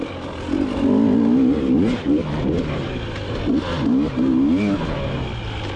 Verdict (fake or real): real